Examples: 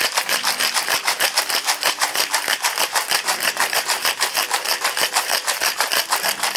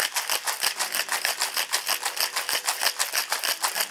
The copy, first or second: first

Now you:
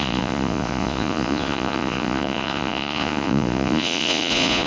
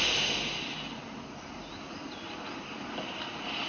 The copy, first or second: first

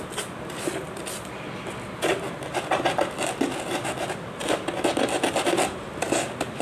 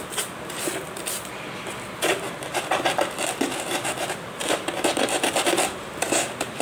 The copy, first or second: second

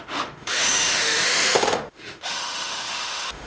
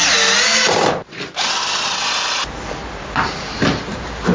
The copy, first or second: first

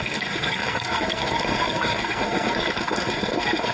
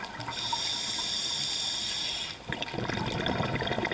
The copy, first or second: first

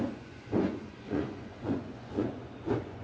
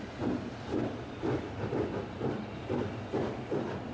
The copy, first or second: first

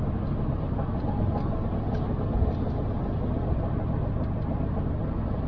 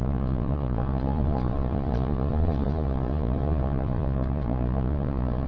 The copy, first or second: second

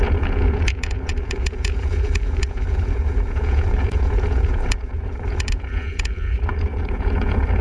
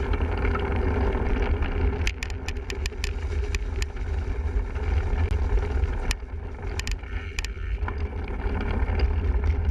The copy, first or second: first